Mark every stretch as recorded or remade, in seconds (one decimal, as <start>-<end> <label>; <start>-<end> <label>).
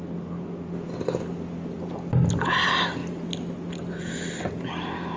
0.0-5.2 recorded